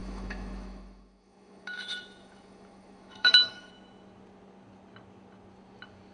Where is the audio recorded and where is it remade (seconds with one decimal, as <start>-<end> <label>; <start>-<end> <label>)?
0.0-3.7 remade; 3.7-6.1 recorded